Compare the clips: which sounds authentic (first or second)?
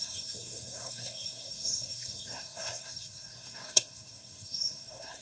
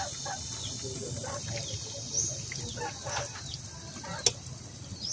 second